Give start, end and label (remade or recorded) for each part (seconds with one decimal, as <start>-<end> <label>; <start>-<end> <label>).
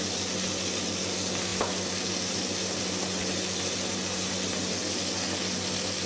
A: 0.0-6.1 recorded